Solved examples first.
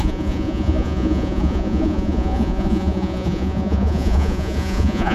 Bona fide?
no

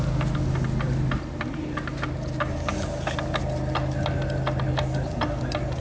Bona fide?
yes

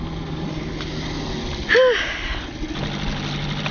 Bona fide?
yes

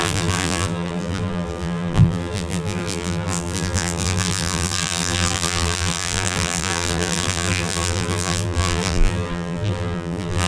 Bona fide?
no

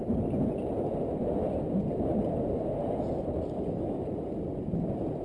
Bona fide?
yes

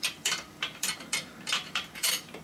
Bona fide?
no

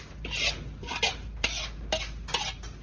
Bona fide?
yes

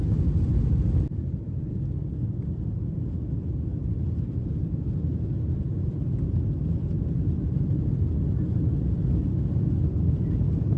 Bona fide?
yes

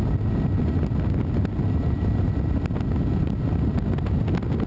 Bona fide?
yes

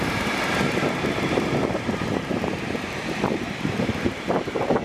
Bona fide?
no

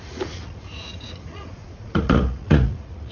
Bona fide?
no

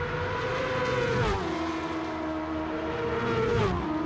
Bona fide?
yes